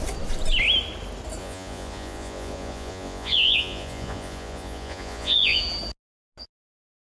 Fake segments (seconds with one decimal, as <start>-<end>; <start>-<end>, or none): 1.4-5.6